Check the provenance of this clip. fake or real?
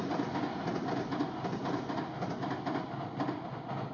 real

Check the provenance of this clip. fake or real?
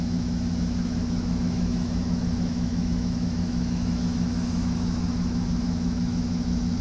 fake